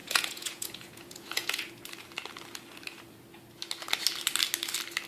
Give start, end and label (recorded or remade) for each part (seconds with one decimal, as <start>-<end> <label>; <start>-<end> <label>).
0.0-1.6 remade; 1.6-5.1 recorded